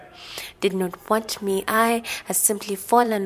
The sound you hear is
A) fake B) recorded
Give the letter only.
A